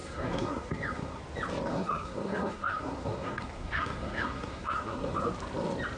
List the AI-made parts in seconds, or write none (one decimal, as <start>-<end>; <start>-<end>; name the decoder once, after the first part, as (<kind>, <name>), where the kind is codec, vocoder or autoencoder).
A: 0.0-1.2 (codec, SNAC); 1.7-5.3